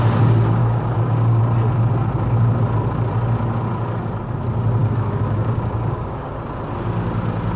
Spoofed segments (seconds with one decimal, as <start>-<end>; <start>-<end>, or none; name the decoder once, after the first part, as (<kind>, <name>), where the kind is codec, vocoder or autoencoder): 0.6-1.4 (codec, DAC); 4.8-6.3